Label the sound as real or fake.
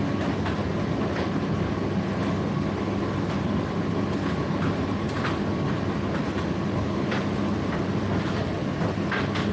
real